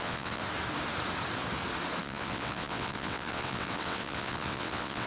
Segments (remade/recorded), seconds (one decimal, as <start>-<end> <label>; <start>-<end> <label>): 0.0-0.4 remade; 0.4-2.0 recorded; 2.0-5.1 remade

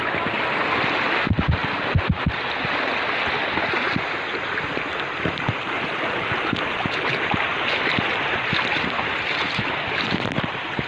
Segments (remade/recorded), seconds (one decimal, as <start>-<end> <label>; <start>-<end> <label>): 0.0-10.9 recorded

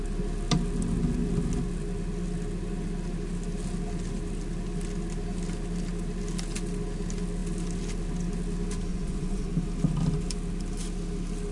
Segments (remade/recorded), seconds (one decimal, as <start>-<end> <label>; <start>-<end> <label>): 0.0-8.9 recorded; 8.9-9.5 remade; 9.5-11.5 recorded